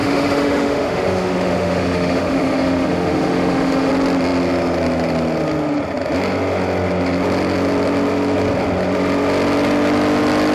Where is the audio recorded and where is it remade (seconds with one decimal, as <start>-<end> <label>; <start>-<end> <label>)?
0.0-3.9 remade; 3.9-10.5 recorded